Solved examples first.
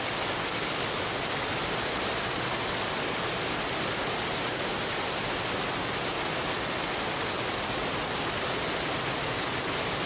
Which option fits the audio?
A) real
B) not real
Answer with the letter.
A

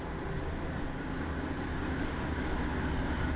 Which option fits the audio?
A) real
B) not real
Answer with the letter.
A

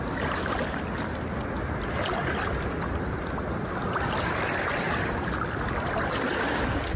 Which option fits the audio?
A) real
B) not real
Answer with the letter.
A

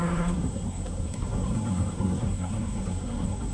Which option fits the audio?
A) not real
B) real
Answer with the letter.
A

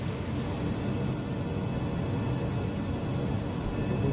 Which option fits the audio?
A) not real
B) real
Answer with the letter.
B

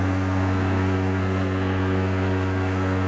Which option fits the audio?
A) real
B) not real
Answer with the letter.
B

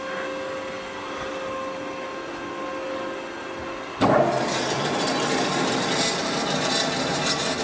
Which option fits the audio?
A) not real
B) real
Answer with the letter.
B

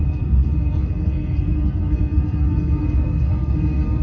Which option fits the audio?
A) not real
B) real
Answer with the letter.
A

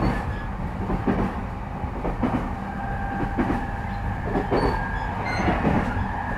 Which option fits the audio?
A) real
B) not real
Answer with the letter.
A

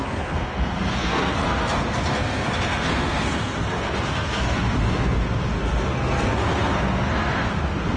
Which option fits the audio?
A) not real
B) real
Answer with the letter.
A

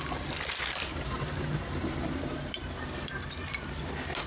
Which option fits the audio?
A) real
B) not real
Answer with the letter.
A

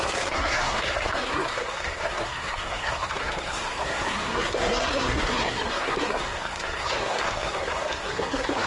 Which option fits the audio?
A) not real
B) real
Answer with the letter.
A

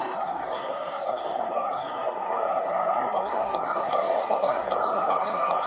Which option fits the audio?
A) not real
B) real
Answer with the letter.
A